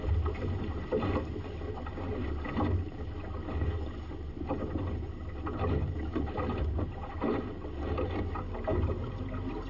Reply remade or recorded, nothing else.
recorded